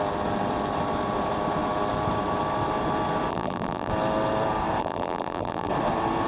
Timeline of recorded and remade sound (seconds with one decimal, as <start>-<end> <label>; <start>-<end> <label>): 0.0-3.3 recorded; 3.3-3.9 remade; 3.9-4.8 recorded; 4.8-5.7 remade; 5.7-6.3 recorded